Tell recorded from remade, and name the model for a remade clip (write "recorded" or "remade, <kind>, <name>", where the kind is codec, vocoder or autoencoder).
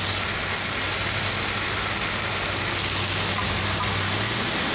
recorded